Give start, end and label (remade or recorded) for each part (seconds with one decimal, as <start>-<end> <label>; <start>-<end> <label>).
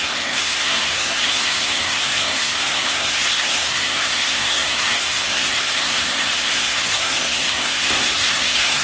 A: 0.0-8.8 remade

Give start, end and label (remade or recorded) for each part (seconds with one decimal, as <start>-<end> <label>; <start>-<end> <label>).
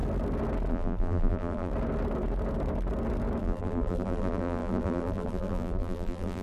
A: 0.0-0.7 recorded; 0.7-1.7 remade; 1.7-3.4 recorded; 3.4-6.4 remade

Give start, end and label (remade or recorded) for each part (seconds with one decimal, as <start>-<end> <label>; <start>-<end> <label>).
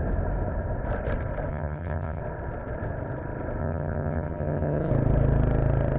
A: 0.0-1.5 recorded; 1.5-2.2 remade; 2.2-3.6 recorded; 3.6-4.9 remade; 4.9-6.0 recorded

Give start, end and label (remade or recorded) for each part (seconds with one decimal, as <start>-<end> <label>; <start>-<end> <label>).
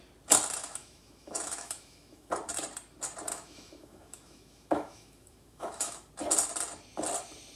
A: 0.0-0.6 recorded; 0.6-2.3 remade; 2.3-3.3 recorded; 3.3-6.1 remade; 6.1-7.6 recorded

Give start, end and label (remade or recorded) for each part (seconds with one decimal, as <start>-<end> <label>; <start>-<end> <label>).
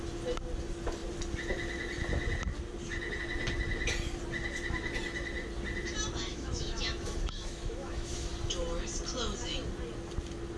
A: 0.0-6.3 recorded; 6.3-8.3 remade; 8.3-10.6 recorded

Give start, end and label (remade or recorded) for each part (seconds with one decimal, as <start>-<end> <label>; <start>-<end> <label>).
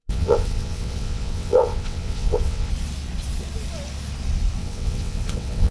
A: 0.0-2.7 remade; 2.7-4.6 recorded; 4.6-5.7 remade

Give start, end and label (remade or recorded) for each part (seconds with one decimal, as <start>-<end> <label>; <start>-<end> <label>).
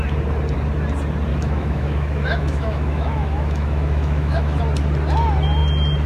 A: 0.0-1.3 recorded; 1.3-4.6 remade; 4.6-6.1 recorded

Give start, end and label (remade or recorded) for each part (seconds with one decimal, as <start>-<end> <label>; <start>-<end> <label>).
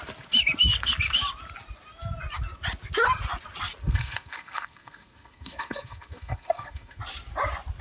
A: 0.0-3.8 recorded; 3.8-7.0 remade; 7.0-7.8 recorded